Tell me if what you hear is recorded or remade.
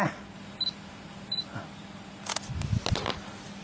recorded